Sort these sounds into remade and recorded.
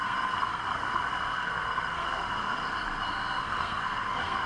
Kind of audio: remade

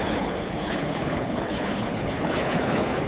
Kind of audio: remade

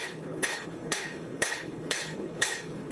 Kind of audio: remade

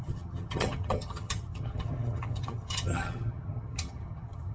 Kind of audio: remade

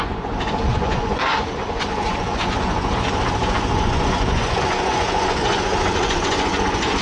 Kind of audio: remade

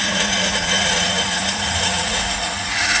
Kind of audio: remade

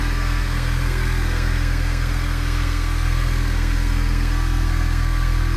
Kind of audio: remade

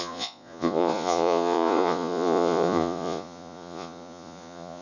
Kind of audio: remade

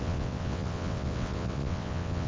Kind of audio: remade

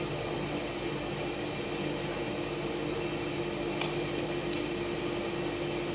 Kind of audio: recorded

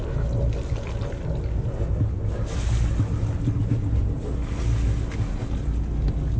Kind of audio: recorded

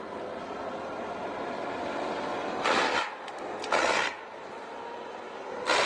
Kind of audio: recorded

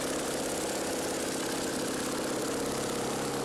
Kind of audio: recorded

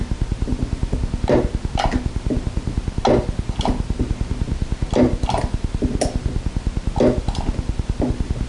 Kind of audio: recorded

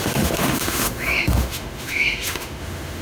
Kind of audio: remade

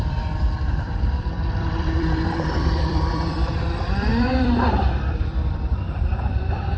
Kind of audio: remade